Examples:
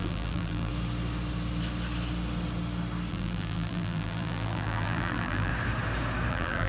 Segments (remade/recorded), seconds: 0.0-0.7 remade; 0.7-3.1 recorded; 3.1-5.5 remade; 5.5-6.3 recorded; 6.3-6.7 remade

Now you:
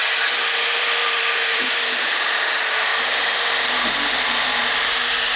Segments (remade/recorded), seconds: 0.0-0.6 recorded; 0.6-2.9 remade; 2.9-3.5 recorded; 3.5-5.4 remade

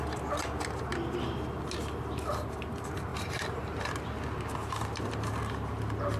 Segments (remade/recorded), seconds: 0.0-3.1 recorded; 3.1-3.8 remade; 3.8-4.6 recorded; 4.6-5.3 remade; 5.3-6.2 recorded